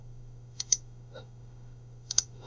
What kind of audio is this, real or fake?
fake